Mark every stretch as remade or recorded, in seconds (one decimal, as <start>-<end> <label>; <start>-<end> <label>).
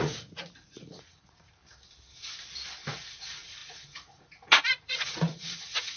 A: 0.0-1.6 remade; 1.6-3.2 recorded; 3.2-6.0 remade